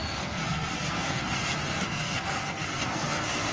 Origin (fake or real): fake